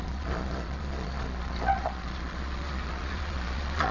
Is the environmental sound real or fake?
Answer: fake